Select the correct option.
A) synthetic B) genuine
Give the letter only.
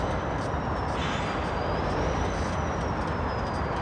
B